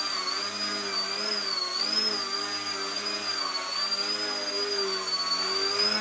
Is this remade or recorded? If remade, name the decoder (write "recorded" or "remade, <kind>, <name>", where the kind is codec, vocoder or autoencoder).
recorded